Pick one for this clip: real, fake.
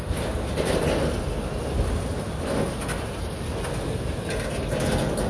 real